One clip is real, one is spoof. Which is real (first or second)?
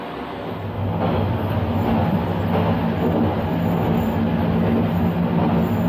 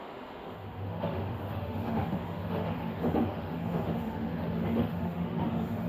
first